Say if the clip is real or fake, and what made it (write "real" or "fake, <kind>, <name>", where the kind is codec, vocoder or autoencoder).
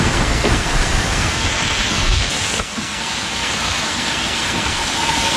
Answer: fake, codec, SNAC